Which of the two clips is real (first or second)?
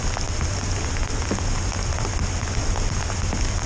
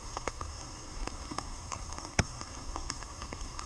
first